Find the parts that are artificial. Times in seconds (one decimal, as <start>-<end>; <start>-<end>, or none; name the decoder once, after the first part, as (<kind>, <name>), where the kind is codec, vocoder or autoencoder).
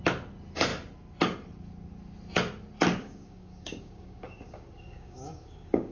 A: 3.0-5.9 (codec, DAC)